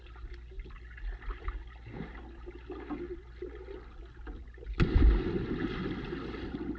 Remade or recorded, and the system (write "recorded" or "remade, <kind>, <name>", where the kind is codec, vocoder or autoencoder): recorded